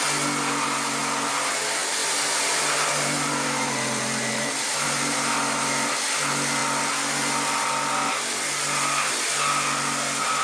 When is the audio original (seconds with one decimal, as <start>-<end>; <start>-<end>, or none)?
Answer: 0.0-2.0; 5.3-10.4